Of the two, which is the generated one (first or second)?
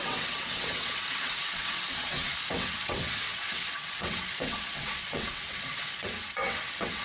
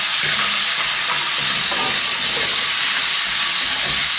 first